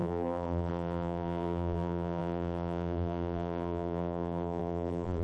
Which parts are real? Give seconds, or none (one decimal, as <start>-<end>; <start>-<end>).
none